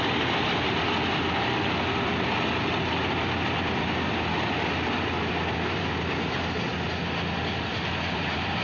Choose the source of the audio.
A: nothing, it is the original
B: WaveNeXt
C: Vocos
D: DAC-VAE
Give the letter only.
A